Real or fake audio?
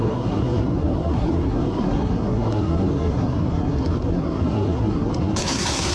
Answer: fake